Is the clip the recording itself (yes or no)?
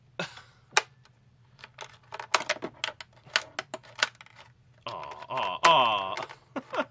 yes